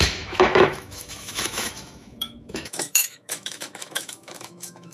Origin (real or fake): fake